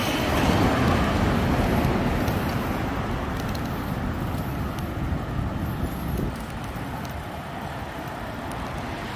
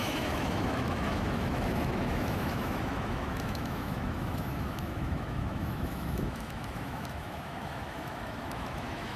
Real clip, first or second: first